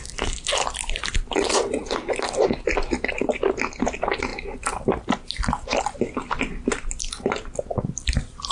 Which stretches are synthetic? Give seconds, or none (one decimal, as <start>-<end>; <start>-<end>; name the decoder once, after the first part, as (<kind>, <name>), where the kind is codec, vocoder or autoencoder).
none